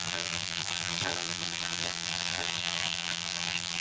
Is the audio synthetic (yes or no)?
yes